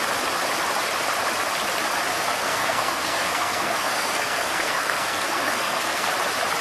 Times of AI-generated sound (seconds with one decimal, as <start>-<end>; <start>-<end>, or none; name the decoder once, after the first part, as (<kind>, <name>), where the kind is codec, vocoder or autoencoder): 2.1-6.1 (codec, SNAC)